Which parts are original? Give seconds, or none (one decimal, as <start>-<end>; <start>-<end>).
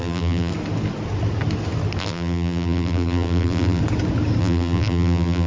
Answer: 0.5-2.0; 3.8-4.4